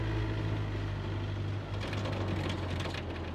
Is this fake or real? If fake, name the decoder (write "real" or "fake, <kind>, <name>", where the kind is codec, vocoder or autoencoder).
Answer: real